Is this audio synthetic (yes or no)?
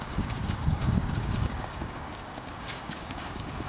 yes